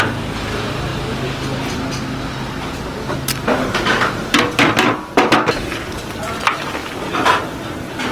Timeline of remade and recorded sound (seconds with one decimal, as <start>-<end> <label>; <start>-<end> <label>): 0.0-8.1 recorded